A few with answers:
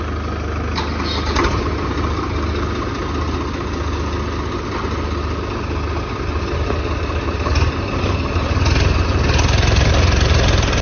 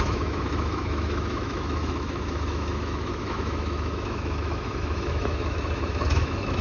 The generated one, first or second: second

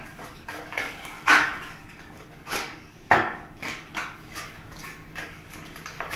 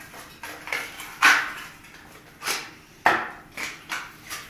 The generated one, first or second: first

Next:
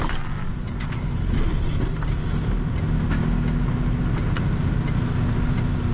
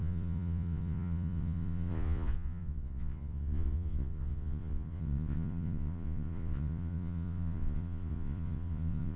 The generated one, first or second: second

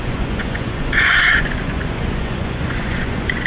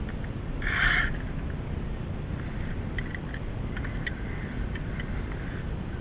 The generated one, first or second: first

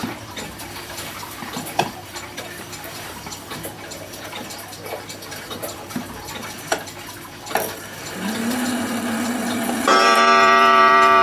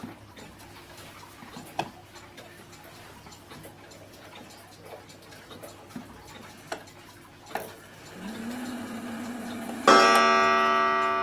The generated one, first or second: first